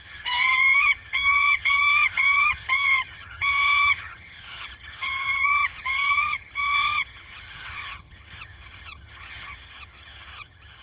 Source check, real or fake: fake